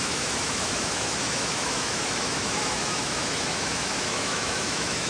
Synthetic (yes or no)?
yes